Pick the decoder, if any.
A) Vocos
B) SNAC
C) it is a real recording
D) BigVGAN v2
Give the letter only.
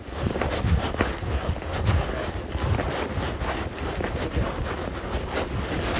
C